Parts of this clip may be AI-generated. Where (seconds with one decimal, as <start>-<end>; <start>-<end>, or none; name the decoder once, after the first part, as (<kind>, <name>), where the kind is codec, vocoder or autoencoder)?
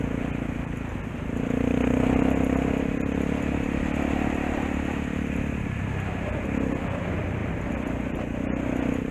none